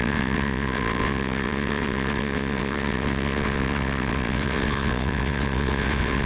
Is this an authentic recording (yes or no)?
no